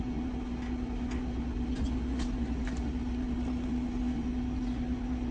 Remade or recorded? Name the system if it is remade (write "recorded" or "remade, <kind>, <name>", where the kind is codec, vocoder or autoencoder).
recorded